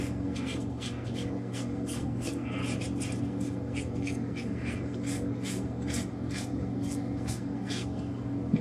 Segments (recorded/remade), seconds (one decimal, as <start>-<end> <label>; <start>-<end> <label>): 0.0-2.6 remade; 2.6-3.2 recorded; 3.2-8.6 remade